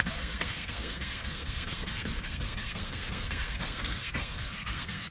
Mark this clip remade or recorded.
remade